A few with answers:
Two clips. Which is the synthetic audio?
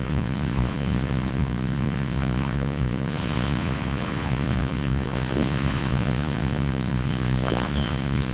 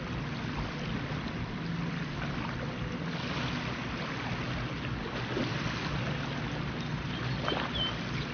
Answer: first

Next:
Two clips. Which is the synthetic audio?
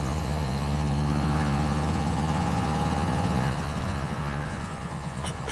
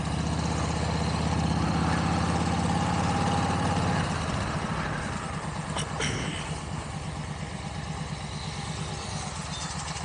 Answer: first